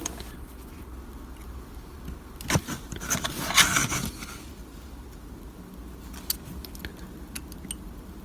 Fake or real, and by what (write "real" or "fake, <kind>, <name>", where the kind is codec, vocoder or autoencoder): real